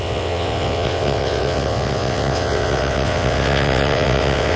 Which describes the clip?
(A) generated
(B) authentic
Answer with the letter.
A